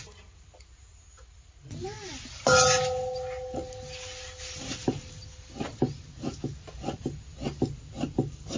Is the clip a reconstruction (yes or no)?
no